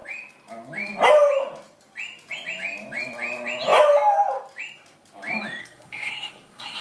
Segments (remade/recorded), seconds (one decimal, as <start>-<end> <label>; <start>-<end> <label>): 0.0-5.6 recorded; 5.6-6.8 remade